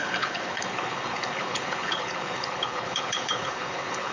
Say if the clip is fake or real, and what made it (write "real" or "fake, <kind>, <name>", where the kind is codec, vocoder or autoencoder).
fake, codec, HILCodec